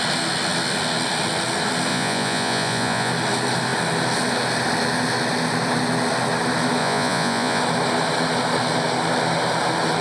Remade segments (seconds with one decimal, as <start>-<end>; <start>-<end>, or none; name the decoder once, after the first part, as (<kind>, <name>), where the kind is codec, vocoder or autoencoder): 1.9-3.1 (vocoder, Vocos); 6.8-7.6